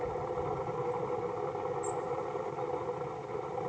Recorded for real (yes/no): yes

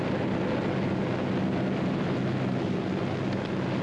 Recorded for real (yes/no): yes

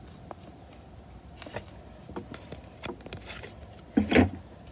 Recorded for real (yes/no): yes